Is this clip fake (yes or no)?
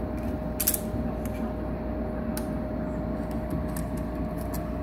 no